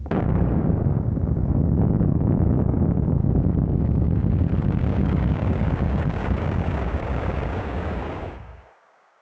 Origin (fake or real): fake